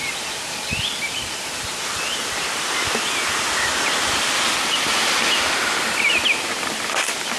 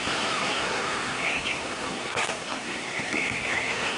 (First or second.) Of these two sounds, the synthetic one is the second